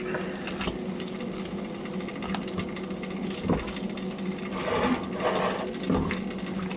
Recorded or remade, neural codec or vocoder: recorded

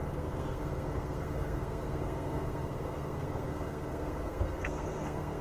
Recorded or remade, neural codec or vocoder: remade, codec, SNAC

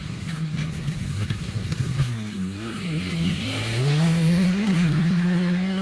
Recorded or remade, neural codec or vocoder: remade, codec, SNAC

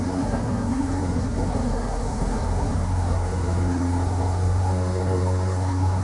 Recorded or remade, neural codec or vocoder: remade, codec, SNAC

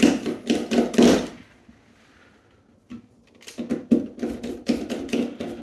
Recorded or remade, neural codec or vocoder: recorded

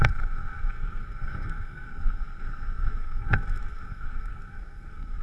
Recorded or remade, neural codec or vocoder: remade, codec, SNAC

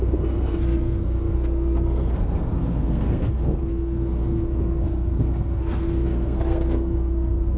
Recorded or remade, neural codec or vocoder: remade, codec, SNAC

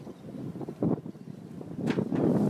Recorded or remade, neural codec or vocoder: recorded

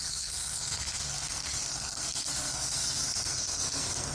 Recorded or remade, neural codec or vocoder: remade, codec, SNAC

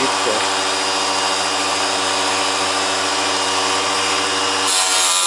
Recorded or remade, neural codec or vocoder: recorded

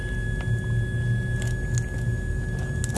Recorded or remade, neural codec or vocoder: recorded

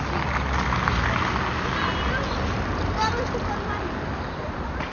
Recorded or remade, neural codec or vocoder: recorded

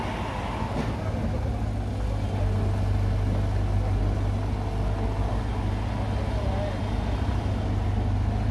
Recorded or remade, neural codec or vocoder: recorded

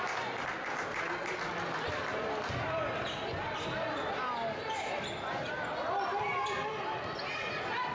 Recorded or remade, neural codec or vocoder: recorded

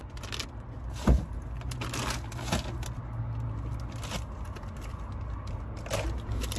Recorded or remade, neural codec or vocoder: recorded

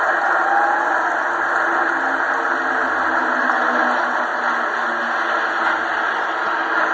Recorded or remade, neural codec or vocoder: recorded